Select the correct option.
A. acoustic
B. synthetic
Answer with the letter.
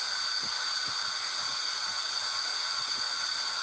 B